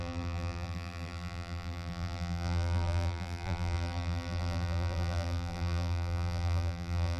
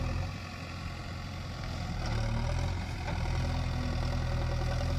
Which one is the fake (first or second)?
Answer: first